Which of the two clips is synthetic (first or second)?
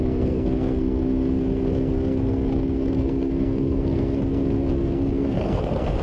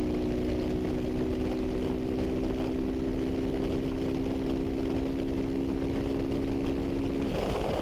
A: first